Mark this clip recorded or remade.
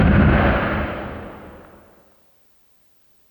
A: recorded